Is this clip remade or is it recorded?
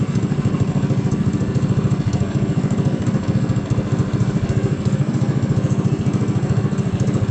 remade